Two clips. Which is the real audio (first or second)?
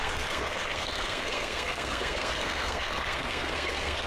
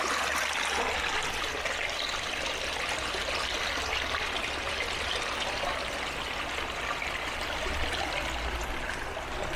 second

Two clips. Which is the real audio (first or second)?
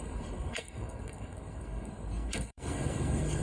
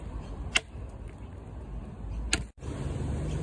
second